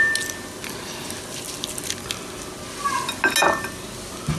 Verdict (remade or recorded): recorded